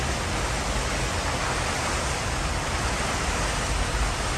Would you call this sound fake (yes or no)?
no